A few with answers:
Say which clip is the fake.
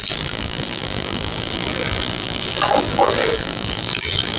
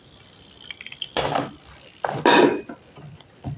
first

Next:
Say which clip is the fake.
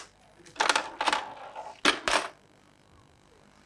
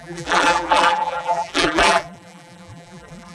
second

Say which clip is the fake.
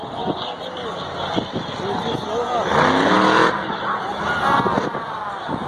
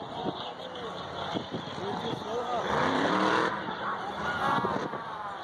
second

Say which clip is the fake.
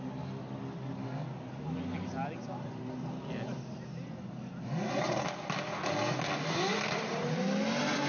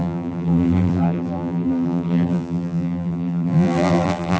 second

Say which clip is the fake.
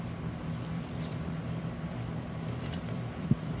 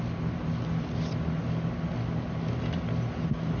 first